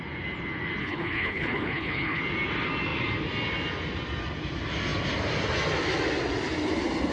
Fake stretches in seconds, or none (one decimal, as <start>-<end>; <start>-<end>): 0.8-2.2